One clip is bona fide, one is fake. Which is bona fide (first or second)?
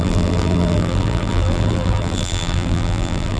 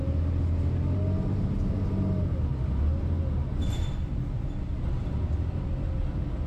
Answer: second